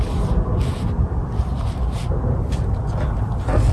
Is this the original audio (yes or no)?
yes